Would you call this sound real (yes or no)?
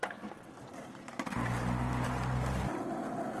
yes